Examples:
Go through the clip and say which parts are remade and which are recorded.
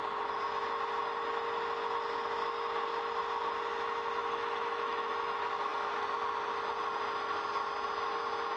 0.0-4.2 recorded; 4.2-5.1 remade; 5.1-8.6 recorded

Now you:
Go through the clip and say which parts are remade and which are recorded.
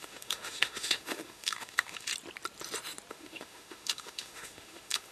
0.0-2.1 remade; 2.1-3.1 recorded; 3.1-5.1 remade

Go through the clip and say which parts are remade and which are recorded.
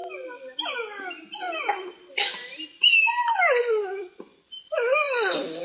0.0-5.6 recorded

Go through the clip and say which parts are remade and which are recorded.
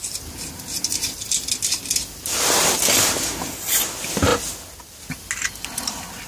0.0-6.3 recorded